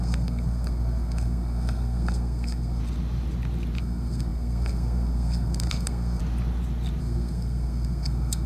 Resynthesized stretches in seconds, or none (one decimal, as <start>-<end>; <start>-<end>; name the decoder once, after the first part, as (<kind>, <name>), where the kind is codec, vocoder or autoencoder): 0.0-2.8 (codec, SNAC); 3.8-6.2; 7.0-8.5